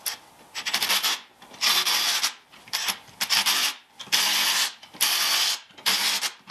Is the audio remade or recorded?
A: recorded